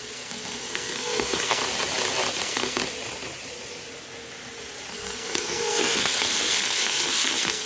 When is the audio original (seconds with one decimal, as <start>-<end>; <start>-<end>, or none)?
1.6-2.4; 2.8-4.9